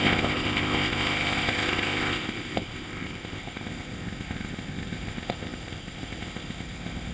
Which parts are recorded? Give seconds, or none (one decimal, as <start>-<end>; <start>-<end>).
none